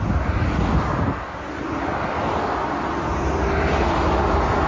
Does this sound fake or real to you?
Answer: real